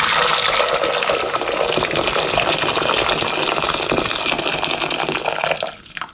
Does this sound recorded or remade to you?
recorded